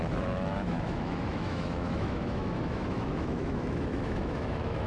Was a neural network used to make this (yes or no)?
yes